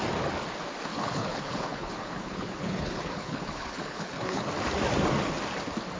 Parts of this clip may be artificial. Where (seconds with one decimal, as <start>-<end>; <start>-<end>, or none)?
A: 0.9-4.5